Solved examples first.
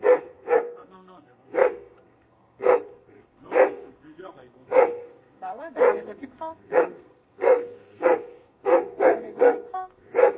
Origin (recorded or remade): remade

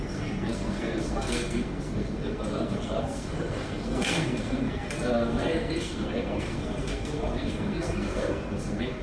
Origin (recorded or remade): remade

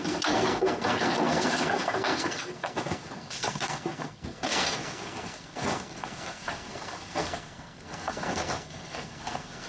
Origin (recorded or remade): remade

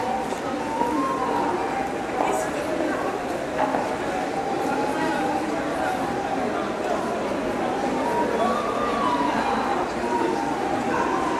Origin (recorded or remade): recorded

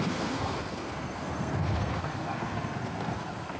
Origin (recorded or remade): remade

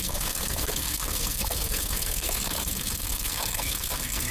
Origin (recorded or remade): remade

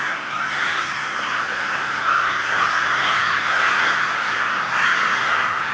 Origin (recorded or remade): remade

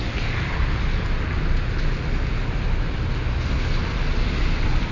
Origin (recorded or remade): recorded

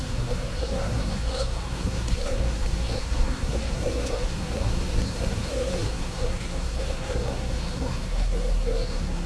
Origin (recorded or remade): remade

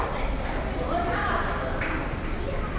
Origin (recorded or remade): recorded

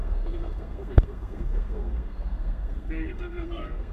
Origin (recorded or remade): remade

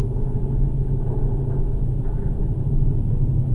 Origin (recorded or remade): recorded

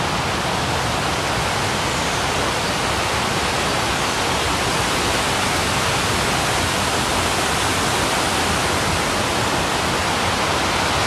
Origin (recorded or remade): recorded